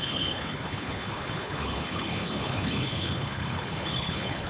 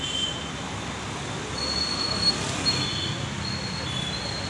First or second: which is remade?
first